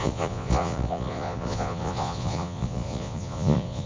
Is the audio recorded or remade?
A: remade